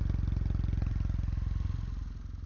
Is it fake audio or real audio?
real